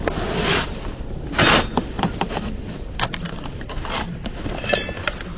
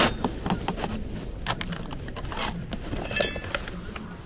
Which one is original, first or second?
second